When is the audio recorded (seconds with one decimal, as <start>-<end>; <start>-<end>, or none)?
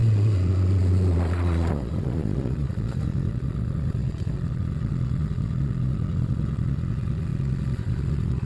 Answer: none